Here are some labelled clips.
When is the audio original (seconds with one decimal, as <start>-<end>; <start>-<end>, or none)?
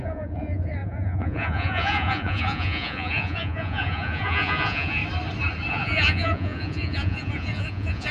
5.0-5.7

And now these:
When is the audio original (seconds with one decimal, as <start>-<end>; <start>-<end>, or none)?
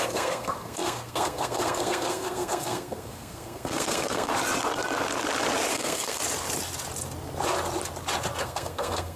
4.3-5.7; 6.2-8.4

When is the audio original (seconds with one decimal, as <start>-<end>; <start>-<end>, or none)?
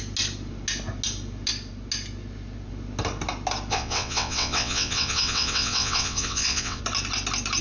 0.0-3.7; 6.8-7.6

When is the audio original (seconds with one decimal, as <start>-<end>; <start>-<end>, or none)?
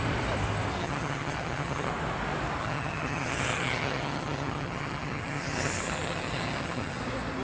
0.0-0.8; 1.9-2.6; 7.0-7.4